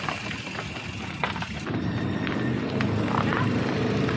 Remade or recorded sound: recorded